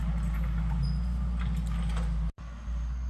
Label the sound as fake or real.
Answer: real